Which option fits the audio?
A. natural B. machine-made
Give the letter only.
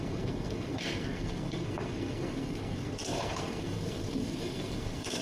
B